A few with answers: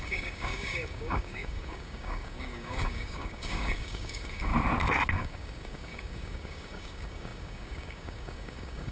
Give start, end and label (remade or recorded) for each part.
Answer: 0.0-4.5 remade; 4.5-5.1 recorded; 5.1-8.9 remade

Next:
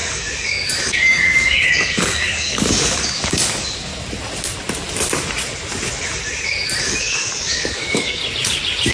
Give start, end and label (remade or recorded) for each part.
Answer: 0.0-3.9 remade; 3.9-6.8 recorded; 6.8-8.2 remade; 8.2-8.9 recorded

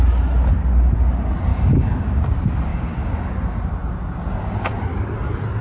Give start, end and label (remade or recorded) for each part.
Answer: 0.0-1.5 recorded; 1.5-2.2 remade; 2.2-2.7 recorded; 2.7-3.3 remade; 3.3-5.6 recorded

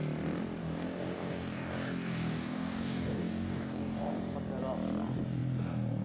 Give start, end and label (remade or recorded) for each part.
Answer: 0.0-0.6 recorded; 0.6-4.2 remade; 4.2-6.0 recorded